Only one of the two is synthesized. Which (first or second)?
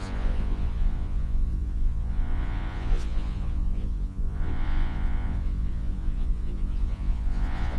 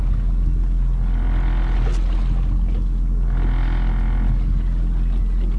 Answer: first